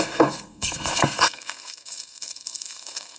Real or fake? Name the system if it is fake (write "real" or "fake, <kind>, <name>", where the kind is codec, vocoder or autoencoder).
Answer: fake, codec, SNAC